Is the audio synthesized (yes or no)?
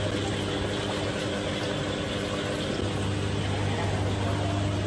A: no